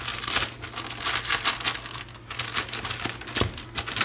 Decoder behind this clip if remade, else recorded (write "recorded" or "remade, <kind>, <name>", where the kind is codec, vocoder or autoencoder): recorded